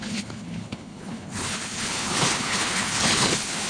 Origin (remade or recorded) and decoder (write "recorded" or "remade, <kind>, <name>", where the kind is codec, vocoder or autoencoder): remade, codec, HILCodec